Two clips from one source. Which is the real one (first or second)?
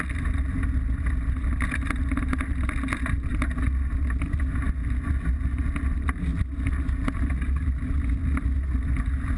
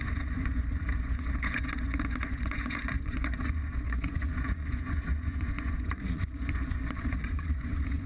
first